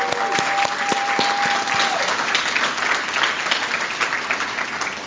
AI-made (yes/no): no